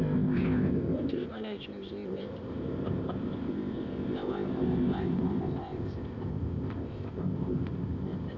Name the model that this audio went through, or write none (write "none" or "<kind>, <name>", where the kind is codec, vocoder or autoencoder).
codec, ZipCodec